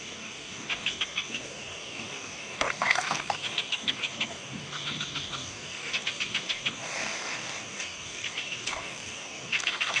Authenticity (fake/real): fake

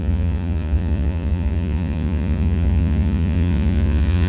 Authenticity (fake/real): fake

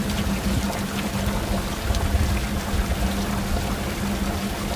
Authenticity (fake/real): real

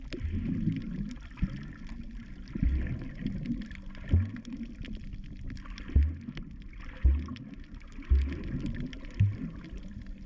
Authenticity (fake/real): real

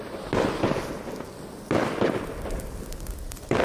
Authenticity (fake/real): real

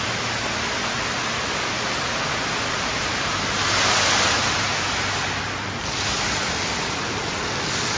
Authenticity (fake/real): real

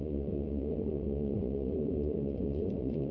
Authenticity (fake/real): fake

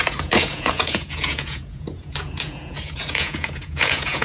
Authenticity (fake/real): fake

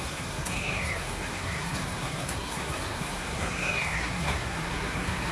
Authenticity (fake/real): fake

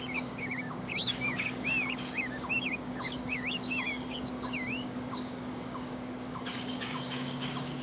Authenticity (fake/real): fake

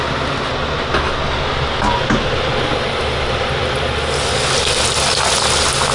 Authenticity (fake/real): real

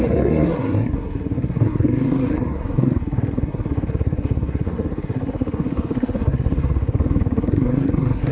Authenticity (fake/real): fake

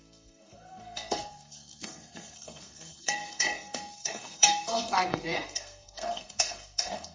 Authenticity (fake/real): fake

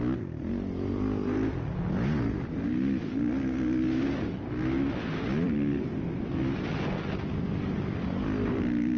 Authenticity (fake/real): real